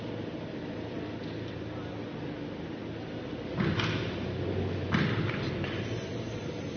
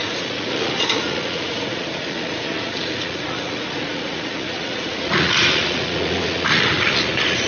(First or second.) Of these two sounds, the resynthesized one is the second